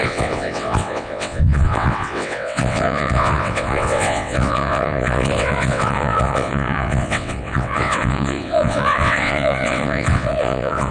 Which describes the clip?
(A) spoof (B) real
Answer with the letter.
A